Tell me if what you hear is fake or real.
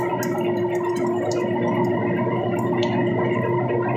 real